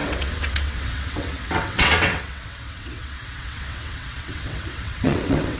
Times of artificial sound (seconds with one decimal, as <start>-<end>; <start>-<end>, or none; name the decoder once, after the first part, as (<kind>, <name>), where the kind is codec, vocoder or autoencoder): 0.0-5.6 (vocoder, WaveNeXt)